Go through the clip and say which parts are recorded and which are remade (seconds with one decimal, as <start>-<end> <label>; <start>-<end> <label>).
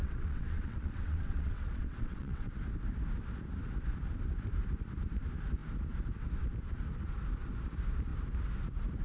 0.0-2.5 remade; 2.5-9.0 recorded